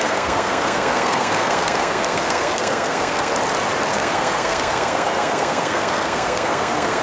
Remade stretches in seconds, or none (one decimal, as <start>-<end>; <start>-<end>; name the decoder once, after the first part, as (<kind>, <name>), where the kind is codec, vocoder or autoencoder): 0.0-3.3 (codec, SNAC); 3.9-7.0